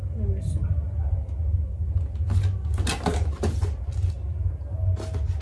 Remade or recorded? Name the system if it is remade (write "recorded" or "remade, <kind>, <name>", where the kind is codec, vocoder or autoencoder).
recorded